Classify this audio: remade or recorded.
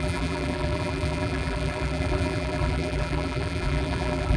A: remade